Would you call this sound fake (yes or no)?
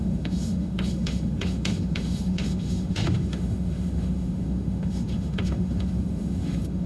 yes